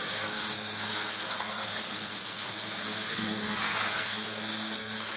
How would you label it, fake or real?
fake